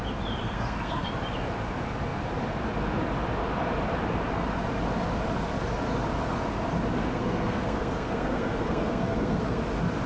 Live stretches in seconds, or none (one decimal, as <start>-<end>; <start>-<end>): 0.0-0.4; 1.1-7.0; 9.6-10.1